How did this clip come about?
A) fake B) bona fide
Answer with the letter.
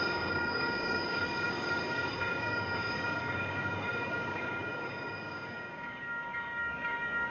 A